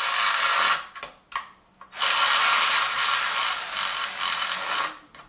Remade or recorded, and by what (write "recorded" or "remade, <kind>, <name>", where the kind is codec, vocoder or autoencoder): recorded